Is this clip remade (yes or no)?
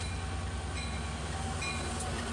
no